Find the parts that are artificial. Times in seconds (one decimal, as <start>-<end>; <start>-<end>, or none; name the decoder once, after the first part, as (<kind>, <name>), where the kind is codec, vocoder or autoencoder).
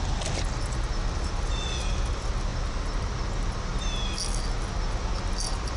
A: none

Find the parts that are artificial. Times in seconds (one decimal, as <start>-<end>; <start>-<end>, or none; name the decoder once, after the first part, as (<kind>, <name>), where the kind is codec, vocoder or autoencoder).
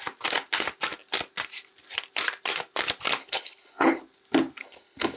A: 3.2-4.0 (codec, HILCodec); 4.6-5.2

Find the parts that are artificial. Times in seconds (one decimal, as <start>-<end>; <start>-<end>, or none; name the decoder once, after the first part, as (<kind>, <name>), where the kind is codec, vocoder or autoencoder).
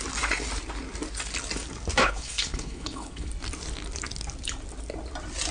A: 2.0-3.3 (codec, HILCodec)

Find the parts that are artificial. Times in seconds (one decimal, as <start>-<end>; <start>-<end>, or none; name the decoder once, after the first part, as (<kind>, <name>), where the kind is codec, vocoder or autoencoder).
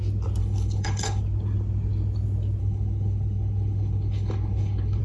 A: 0.4-1.2 (codec, HILCodec); 2.6-5.0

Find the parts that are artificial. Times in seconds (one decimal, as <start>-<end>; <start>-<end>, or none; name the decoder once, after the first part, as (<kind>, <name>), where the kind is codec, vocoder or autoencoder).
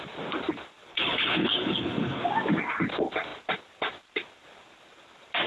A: 0.9-2.2 (codec, HILCodec)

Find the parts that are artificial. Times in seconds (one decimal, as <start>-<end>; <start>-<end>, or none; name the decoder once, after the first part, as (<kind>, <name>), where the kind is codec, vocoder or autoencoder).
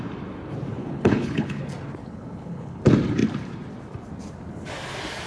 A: 0.8-1.6 (codec, HILCodec); 2.0-2.8